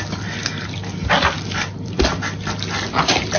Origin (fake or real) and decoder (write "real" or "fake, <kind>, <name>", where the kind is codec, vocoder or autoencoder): real